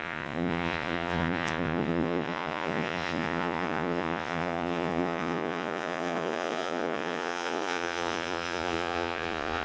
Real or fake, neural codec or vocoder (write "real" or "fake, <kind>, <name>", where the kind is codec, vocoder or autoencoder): fake, vocoder, Vocos